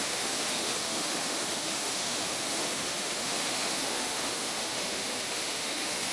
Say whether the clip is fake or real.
fake